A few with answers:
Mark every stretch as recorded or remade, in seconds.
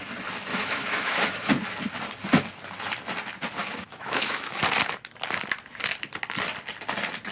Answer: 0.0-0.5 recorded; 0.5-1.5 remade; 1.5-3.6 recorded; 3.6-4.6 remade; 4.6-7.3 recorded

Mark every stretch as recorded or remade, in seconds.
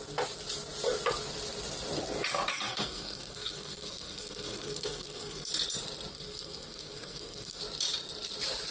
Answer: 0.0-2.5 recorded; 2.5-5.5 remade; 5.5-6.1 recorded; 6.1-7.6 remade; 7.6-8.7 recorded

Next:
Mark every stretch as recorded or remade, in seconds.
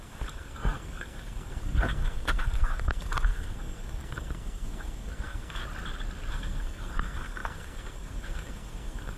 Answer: 0.0-5.6 remade; 5.6-6.3 recorded; 6.3-9.2 remade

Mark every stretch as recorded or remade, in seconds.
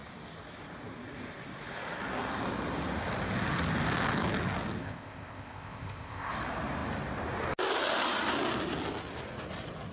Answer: 0.0-4.8 recorded; 4.8-6.3 remade; 6.3-9.9 recorded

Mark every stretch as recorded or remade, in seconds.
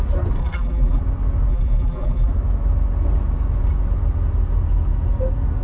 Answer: 0.0-0.4 recorded; 0.4-1.0 remade; 1.0-1.5 recorded; 1.5-2.3 remade; 2.3-5.6 recorded